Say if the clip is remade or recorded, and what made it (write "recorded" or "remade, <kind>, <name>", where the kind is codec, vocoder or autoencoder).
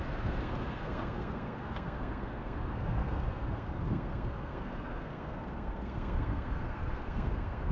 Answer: remade, codec, SNAC